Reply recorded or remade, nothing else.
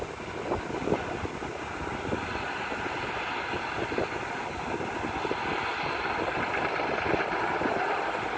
recorded